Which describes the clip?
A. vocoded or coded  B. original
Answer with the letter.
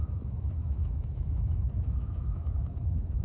A